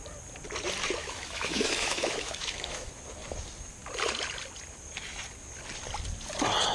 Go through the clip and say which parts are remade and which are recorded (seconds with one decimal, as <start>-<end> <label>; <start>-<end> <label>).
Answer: 0.0-1.0 recorded; 1.0-2.9 remade; 2.9-6.7 recorded